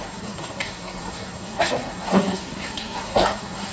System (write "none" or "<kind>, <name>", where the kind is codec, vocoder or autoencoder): codec, SNAC